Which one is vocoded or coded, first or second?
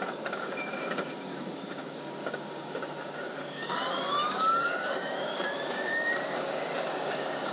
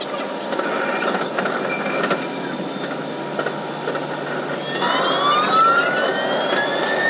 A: first